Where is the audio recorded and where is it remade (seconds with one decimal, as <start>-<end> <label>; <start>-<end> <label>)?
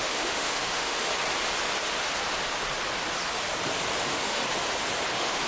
0.0-1.1 remade; 1.1-4.0 recorded; 4.0-4.4 remade; 4.4-5.1 recorded; 5.1-5.5 remade